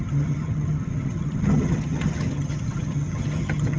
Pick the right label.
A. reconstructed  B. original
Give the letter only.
A